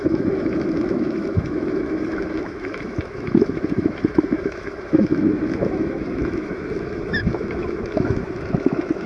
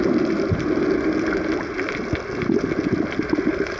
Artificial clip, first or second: first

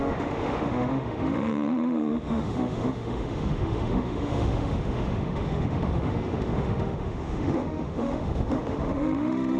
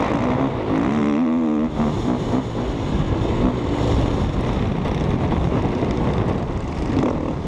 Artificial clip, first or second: first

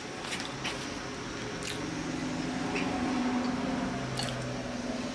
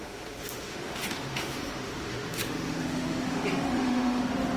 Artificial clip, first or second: second